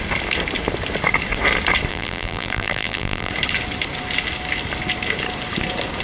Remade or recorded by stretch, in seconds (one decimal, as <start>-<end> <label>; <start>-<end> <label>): 0.0-1.9 recorded; 1.9-3.3 remade; 3.3-6.0 recorded

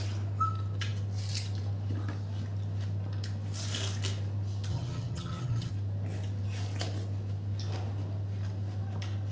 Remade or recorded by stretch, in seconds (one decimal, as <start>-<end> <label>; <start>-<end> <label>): 0.0-4.7 recorded; 4.7-5.7 remade; 5.7-9.3 recorded

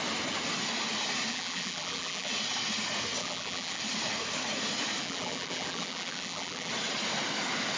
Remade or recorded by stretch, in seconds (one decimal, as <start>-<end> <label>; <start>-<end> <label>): 0.0-1.3 recorded; 1.3-2.3 remade; 2.3-3.2 recorded; 3.2-3.8 remade; 3.8-5.0 recorded; 5.0-6.7 remade; 6.7-7.8 recorded

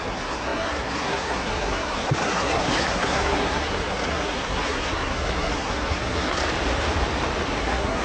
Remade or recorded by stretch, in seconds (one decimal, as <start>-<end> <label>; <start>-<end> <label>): 0.0-6.4 remade; 6.4-7.6 recorded; 7.6-8.0 remade